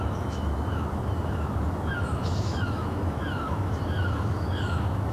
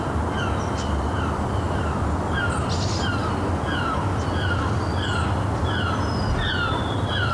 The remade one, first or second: first